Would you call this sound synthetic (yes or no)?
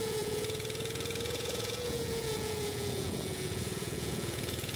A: yes